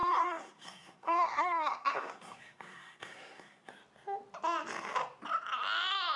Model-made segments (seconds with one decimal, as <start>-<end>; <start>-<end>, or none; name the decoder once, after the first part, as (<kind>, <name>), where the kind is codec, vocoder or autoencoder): 0.0-3.7 (codec, SNAC)